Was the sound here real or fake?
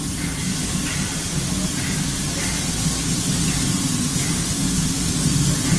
real